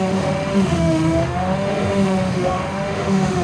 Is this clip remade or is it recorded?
remade